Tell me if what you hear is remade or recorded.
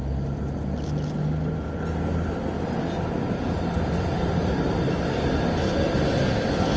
recorded